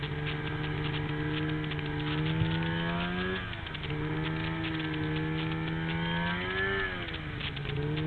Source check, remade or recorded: recorded